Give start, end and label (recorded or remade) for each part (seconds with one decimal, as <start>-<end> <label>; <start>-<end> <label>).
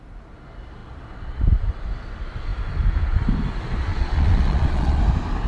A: 0.0-3.9 recorded; 3.9-5.0 remade; 5.0-5.5 recorded